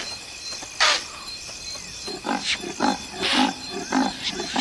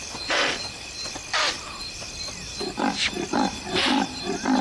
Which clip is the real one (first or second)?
first